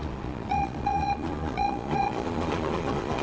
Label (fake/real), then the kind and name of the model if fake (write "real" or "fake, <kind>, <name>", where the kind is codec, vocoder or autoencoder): fake, vocoder, Vocos